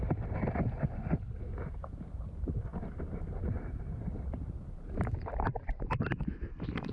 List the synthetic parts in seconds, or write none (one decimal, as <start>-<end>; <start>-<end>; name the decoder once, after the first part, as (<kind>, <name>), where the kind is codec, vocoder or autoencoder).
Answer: 2.7-6.1 (vocoder, BigVGAN v2)